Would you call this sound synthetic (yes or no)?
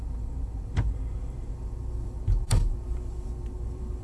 yes